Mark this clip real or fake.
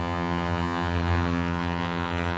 fake